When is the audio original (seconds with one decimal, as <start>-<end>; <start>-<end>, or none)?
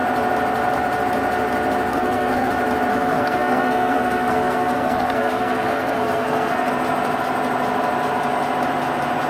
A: 0.0-1.9; 2.5-2.9; 6.7-9.3